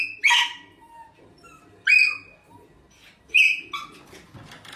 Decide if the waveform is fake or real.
real